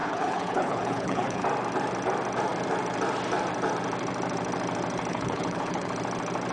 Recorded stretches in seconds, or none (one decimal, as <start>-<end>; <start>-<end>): 1.4-5.1; 5.9-6.5